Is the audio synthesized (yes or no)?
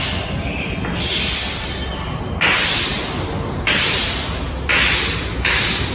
no